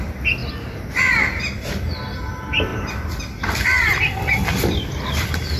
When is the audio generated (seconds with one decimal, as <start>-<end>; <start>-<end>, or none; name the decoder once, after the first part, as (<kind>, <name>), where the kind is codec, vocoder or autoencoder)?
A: none